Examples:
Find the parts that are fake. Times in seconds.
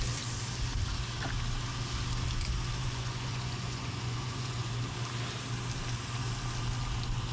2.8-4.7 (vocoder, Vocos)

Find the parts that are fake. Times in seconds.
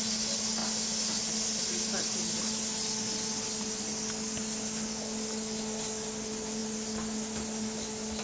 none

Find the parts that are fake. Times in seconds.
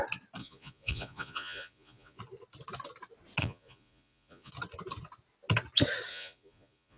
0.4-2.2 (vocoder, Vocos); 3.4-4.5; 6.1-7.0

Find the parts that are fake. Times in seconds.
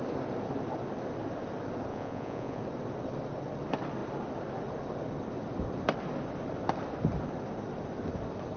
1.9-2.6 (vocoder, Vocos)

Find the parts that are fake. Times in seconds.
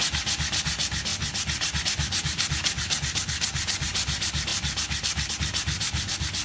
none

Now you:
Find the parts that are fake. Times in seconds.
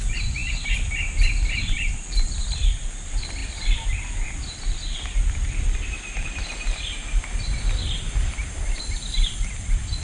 none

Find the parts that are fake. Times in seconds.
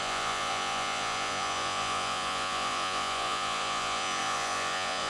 0.0-5.1 (vocoder, Vocos)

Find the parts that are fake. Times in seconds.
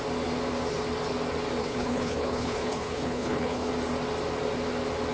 1.6-3.7 (codec, HILCodec)